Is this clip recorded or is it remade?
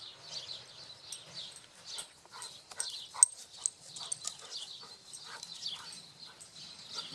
recorded